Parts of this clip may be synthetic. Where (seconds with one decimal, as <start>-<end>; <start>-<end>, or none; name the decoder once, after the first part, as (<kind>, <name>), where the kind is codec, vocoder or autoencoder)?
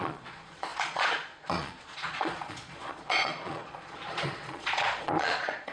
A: 0.0-5.7 (vocoder, Vocos)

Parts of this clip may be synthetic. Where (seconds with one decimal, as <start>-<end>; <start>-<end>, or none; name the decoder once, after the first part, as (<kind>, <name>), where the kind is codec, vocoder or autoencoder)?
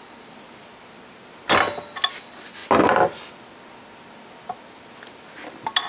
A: none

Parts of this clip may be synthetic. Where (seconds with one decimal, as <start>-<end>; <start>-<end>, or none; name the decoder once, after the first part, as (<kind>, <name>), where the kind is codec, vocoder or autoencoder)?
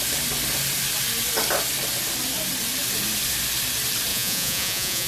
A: 4.1-5.1 (vocoder, Vocos)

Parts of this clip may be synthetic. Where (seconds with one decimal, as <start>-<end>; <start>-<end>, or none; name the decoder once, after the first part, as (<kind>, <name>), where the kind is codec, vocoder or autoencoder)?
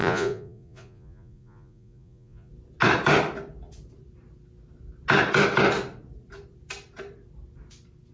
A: 0.0-2.5 (vocoder, Vocos)